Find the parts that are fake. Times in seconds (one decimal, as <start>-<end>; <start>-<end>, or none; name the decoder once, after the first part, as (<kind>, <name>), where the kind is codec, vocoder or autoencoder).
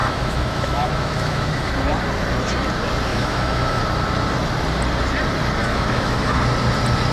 0.0-1.7 (autoencoder, DAC-VAE); 3.1-3.8; 5.6-6.4